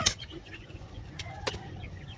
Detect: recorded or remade remade